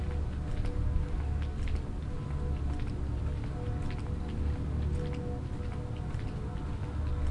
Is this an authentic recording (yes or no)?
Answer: yes